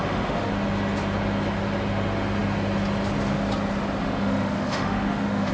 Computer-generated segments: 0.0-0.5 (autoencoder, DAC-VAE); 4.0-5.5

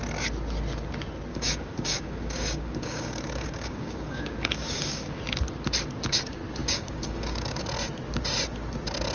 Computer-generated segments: 1.3-5.2 (codec, DAC); 6.6-7.6

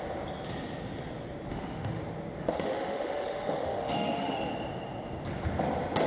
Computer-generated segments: 1.5-2.0 (autoencoder, DAC-VAE); 2.4-4.5